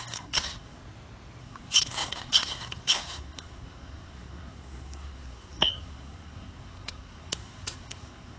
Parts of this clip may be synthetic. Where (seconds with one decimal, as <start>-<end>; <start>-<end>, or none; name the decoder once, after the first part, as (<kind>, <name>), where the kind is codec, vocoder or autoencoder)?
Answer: 0.0-0.8 (codec, SNAC); 1.4-8.4